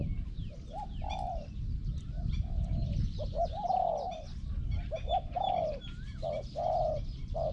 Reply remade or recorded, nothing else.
remade